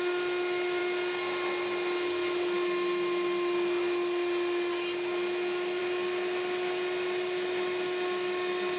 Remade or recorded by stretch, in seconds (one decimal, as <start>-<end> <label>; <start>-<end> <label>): 0.0-8.8 recorded